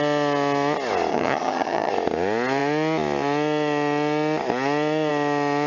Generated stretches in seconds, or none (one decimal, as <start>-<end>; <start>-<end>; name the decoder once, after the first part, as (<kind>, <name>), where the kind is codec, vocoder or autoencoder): 1.1-1.9 (vocoder, HiFi-GAN)